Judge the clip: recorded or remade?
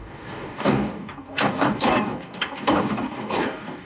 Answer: remade